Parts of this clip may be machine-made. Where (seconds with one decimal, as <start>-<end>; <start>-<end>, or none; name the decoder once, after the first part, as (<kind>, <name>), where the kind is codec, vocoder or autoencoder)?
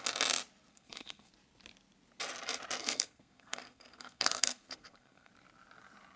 0.7-1.3 (codec, SNAC); 2.8-5.3